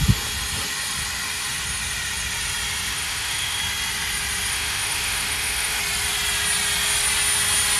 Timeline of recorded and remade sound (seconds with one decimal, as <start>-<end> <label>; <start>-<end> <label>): 0.0-2.9 recorded; 2.9-3.6 remade; 3.6-4.5 recorded; 4.5-5.8 remade; 5.8-7.8 recorded